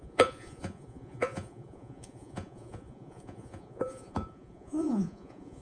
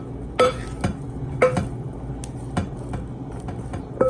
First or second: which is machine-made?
first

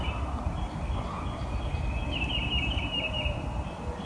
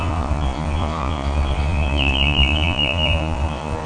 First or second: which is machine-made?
second